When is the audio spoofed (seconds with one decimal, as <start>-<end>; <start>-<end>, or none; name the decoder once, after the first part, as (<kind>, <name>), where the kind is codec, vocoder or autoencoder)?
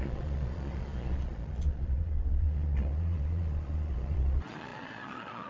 0.0-5.5 (vocoder, Vocos)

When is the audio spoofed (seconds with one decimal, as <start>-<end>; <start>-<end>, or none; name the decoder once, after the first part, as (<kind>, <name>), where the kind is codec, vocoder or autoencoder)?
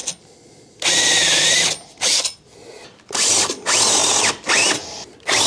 none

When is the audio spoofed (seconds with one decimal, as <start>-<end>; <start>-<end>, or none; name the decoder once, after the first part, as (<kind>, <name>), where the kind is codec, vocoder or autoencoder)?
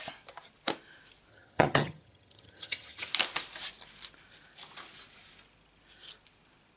1.3-3.1 (vocoder, HiFi-GAN)